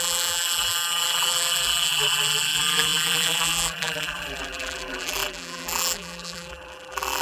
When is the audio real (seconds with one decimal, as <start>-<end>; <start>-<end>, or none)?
none